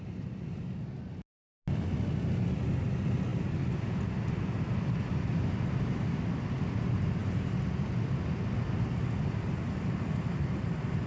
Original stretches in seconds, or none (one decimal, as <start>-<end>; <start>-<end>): 0.0-11.1